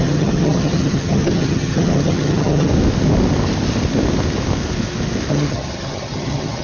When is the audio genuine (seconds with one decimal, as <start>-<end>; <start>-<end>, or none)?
2.7-5.3